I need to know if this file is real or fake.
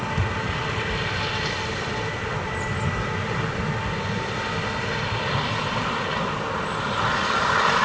real